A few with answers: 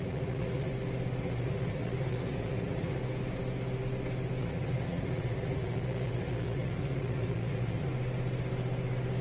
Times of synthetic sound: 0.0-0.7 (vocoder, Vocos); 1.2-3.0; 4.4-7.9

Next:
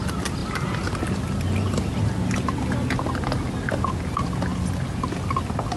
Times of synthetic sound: none